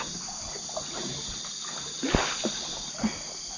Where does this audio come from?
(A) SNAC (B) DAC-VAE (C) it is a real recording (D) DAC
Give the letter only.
C